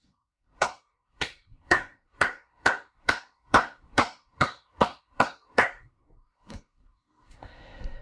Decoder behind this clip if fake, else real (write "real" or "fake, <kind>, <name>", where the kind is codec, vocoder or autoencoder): fake, codec, SNAC